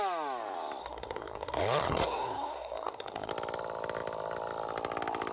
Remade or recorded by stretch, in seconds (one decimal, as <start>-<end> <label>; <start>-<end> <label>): 0.0-0.8 recorded; 0.8-3.3 remade; 3.3-5.3 recorded